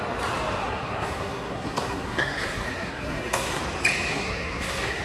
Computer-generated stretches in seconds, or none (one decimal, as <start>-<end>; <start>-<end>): 0.6-3.6; 4.1-5.0